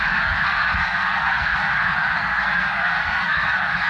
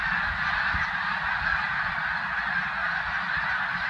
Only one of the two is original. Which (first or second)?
second